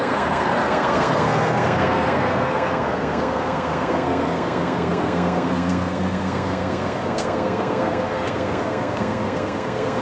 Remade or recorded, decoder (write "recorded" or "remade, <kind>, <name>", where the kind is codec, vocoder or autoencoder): remade, codec, SNAC